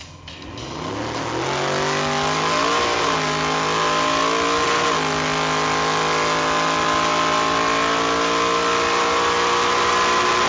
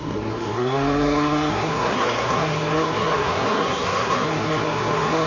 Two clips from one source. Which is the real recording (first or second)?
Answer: first